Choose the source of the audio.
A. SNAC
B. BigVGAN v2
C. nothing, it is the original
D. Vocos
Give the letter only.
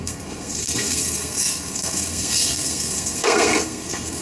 A